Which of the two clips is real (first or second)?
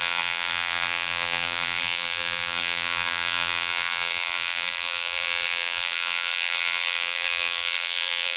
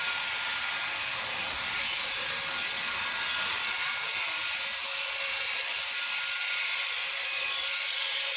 second